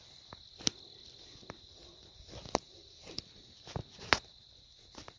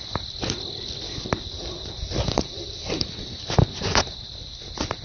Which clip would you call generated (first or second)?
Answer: second